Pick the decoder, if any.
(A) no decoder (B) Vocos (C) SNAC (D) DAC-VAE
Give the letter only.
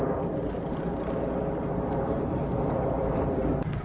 A